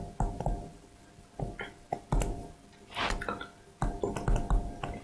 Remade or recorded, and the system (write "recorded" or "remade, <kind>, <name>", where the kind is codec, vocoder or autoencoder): recorded